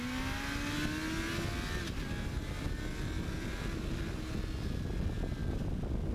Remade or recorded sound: recorded